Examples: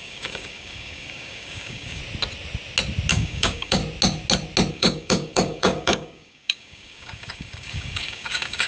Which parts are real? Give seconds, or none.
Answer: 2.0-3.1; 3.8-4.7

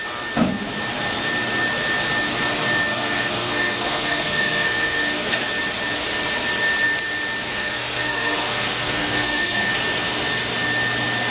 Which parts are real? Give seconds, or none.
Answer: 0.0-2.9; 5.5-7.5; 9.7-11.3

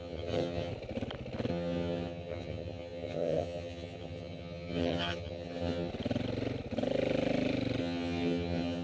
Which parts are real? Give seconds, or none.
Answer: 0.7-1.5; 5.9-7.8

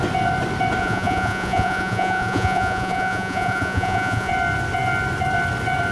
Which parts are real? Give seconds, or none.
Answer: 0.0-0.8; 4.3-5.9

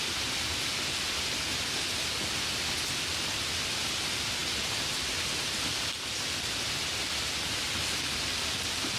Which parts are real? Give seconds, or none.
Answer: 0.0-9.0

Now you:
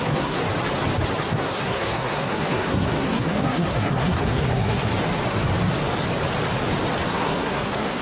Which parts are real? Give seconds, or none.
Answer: 0.4-1.2; 4.9-7.1

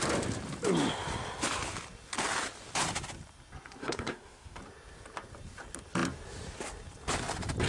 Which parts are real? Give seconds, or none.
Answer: 0.0-3.8; 4.6-7.7

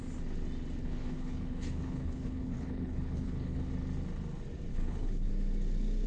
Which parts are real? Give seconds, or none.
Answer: 0.0-0.8; 3.7-4.7; 5.3-6.1